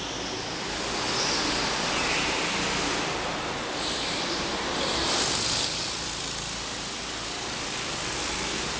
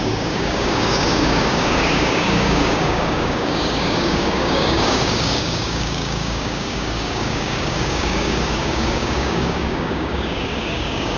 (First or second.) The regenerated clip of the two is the second